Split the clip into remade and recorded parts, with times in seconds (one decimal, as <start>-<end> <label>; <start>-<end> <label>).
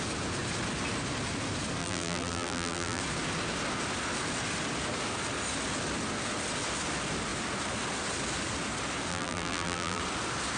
0.0-1.8 recorded; 1.8-3.0 remade; 3.0-9.1 recorded; 9.1-10.0 remade; 10.0-10.6 recorded